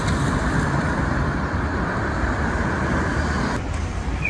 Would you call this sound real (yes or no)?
no